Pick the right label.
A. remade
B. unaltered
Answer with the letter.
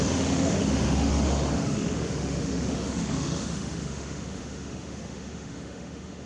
A